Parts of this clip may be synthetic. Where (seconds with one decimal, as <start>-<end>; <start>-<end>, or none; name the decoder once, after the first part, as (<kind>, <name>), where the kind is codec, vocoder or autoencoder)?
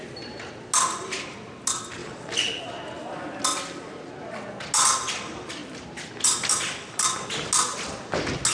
2.0-2.6 (vocoder, BigVGAN v2)